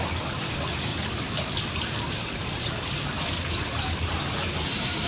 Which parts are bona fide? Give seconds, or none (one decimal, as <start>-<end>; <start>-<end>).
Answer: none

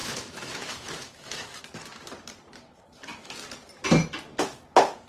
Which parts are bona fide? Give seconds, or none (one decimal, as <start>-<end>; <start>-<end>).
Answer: 1.6-5.1

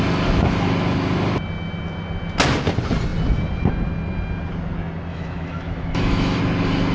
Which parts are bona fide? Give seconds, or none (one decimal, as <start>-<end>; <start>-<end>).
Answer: 0.0-5.1; 6.4-6.9

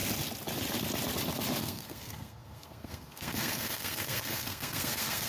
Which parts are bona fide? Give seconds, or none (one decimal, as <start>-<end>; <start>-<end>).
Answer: 0.0-1.6